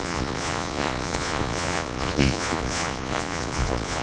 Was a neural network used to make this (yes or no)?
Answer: yes